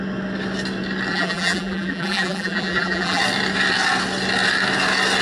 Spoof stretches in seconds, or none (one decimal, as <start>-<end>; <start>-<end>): 1.1-3.2